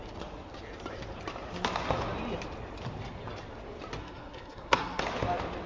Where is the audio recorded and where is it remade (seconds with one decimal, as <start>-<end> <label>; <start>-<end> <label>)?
0.0-4.0 recorded; 4.0-5.0 remade; 5.0-5.7 recorded